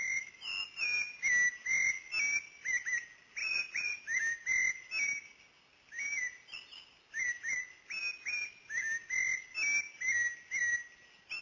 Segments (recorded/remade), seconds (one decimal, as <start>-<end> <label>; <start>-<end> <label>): 0.0-3.4 recorded; 3.4-4.0 remade; 4.0-11.4 recorded